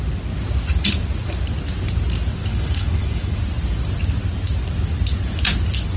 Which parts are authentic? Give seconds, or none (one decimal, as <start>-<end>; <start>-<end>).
0.0-2.5; 3.4-6.0